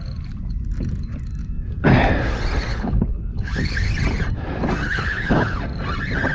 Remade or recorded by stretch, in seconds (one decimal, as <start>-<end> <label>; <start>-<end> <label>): 0.0-2.7 recorded; 2.7-3.9 remade; 3.9-4.9 recorded; 4.9-5.6 remade; 5.6-6.3 recorded